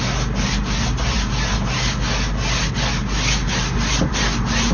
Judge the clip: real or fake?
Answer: real